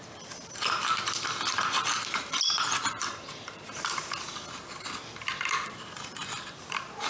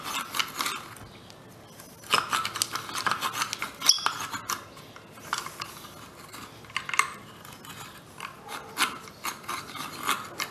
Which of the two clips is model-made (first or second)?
first